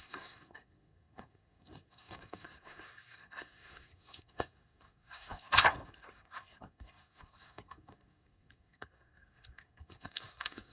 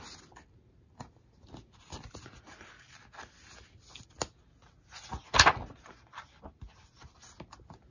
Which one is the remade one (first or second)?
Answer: first